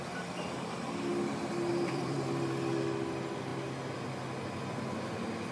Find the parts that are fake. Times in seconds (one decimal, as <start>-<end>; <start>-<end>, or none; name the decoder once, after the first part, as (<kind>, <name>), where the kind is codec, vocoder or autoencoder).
none